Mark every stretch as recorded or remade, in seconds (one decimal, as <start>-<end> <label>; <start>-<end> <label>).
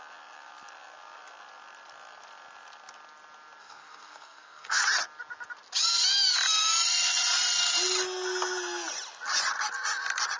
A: 0.0-3.6 recorded; 3.6-4.8 remade; 4.8-10.4 recorded